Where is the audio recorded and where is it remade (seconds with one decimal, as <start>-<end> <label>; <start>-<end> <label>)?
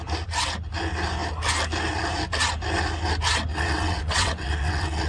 0.0-3.5 recorded; 3.5-5.1 remade